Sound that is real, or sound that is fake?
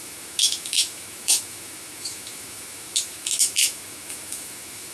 fake